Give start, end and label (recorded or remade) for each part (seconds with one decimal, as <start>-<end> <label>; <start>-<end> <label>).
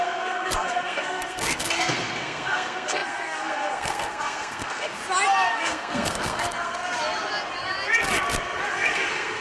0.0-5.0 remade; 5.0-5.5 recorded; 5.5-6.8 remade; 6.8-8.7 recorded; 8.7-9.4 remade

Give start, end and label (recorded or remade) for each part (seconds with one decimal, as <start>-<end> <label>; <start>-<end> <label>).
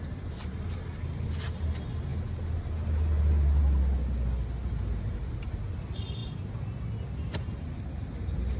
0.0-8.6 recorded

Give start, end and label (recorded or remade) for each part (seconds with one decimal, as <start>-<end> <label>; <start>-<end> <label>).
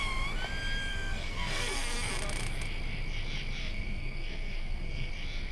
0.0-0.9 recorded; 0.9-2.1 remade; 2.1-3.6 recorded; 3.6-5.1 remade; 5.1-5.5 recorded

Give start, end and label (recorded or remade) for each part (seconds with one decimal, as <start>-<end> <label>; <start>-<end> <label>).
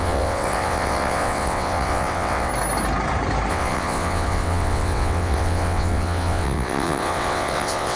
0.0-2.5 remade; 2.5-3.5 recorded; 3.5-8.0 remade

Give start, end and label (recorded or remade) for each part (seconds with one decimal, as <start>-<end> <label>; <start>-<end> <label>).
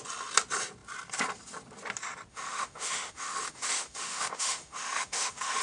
0.0-2.3 recorded; 2.3-5.6 remade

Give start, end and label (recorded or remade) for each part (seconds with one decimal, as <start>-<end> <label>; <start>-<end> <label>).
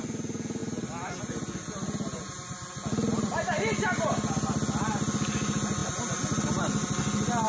0.0-7.5 recorded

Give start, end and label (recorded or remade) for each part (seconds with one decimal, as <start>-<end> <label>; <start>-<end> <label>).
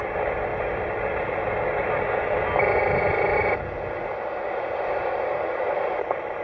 0.0-0.5 recorded; 0.5-2.1 remade; 2.1-6.4 recorded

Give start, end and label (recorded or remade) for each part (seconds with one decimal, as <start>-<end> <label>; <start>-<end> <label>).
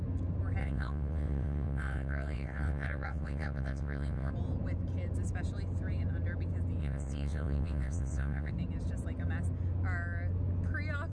0.0-0.6 recorded; 0.6-4.3 remade; 4.3-6.8 recorded; 6.8-8.5 remade; 8.5-11.1 recorded